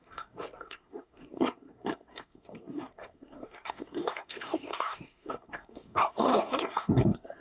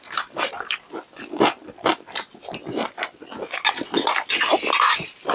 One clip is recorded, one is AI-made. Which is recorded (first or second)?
second